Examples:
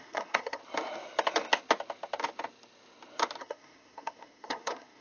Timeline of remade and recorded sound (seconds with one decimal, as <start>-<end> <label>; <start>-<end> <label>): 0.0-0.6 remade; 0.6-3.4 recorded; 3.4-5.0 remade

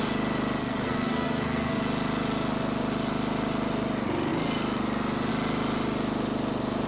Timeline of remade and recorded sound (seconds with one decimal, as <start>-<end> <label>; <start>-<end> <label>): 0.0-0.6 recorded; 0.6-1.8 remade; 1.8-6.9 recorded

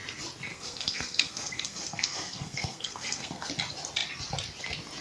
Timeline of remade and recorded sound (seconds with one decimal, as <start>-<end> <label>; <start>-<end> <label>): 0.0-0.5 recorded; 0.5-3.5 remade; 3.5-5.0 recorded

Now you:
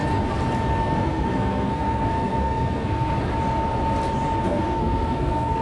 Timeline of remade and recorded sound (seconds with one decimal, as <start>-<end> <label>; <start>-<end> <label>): 0.0-0.8 recorded; 0.8-3.1 remade; 3.1-4.4 recorded; 4.4-5.6 remade

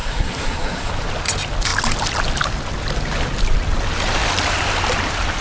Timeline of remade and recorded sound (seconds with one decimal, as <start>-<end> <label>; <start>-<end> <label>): 0.0-0.9 remade; 0.9-5.4 recorded